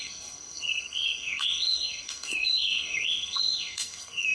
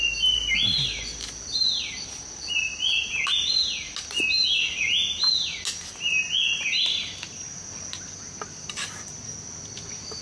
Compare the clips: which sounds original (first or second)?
second